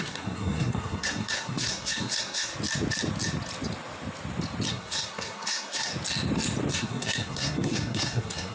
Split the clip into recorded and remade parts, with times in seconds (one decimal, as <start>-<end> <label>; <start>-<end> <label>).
0.0-2.5 remade; 2.5-4.7 recorded; 4.7-5.9 remade; 5.9-6.7 recorded; 6.7-8.5 remade